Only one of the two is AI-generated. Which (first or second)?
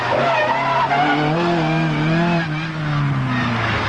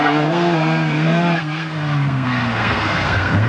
second